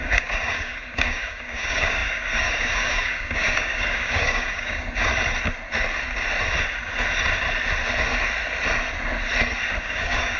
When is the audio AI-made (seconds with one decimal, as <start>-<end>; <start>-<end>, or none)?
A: 0.0-5.1; 9.8-10.4